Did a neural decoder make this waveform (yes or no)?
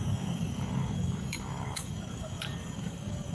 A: yes